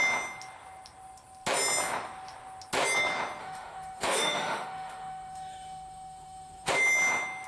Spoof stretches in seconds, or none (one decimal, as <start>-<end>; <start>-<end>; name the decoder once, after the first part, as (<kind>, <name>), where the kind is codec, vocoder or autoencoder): 3.4-6.7 (autoencoder, DAC-VAE)